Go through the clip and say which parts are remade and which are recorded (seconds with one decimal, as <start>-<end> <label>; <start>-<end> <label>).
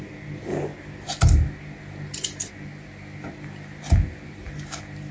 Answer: 0.0-5.1 recorded